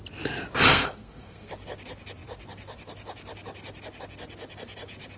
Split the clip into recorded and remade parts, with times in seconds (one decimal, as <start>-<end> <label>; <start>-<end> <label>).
0.0-0.7 recorded; 0.7-1.5 remade; 1.5-5.2 recorded